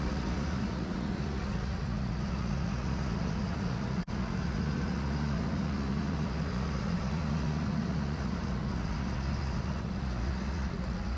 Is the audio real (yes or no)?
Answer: no